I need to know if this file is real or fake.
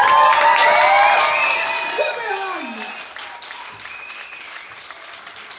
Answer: real